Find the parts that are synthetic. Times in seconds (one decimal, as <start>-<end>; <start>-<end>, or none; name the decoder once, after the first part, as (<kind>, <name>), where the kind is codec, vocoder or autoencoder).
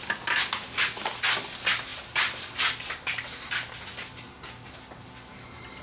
none